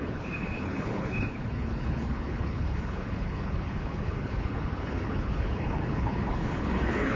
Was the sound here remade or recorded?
remade